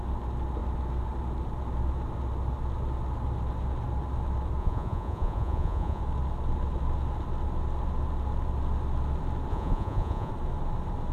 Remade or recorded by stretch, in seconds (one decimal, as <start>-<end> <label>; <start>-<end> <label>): 0.0-4.6 recorded; 4.6-6.0 remade; 6.0-9.5 recorded; 9.5-10.3 remade; 10.3-11.1 recorded